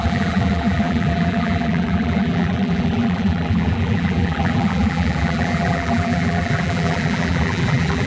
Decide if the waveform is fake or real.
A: fake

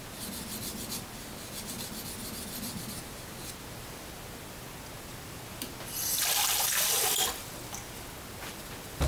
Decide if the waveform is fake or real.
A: real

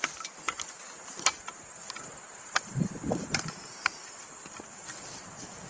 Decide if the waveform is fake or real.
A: real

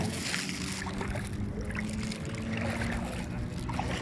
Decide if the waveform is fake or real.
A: real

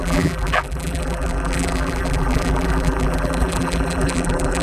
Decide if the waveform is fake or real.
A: fake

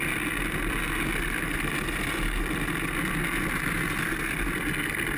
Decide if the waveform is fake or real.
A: real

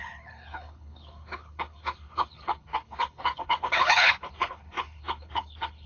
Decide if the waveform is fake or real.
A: fake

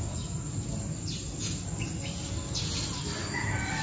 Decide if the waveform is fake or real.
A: real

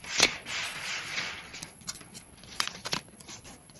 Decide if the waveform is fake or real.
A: fake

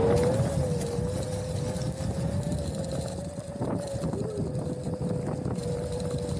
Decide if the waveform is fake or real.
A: real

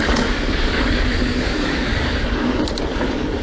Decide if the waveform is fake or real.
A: fake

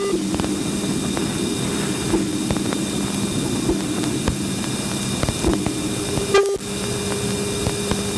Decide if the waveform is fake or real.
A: real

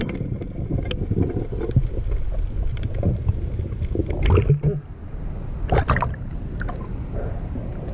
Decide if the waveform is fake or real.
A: real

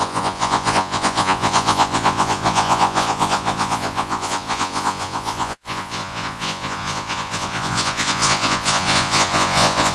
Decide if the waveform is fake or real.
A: fake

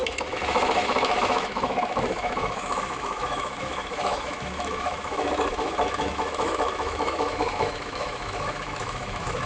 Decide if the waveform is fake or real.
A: fake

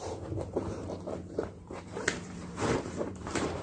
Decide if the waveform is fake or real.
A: fake